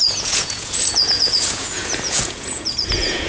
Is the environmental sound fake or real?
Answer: fake